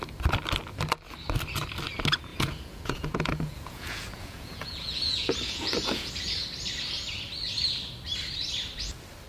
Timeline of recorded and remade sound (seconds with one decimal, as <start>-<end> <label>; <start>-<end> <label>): 0.0-2.3 recorded; 2.3-6.1 remade; 6.1-9.3 recorded